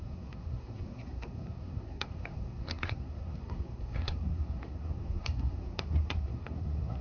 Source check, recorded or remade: remade